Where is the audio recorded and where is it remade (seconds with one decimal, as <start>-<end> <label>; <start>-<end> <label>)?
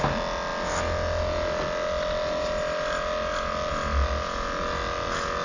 0.0-5.4 recorded